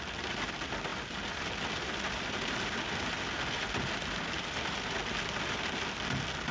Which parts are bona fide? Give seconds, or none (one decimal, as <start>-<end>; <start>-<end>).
0.0-6.5